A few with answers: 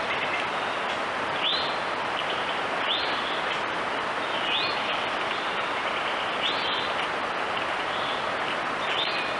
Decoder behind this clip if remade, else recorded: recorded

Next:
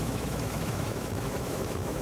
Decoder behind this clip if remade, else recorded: remade, autoencoder, DAC-VAE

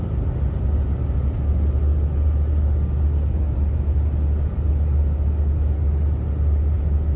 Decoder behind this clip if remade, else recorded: recorded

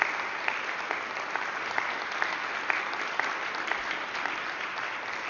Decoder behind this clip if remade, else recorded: recorded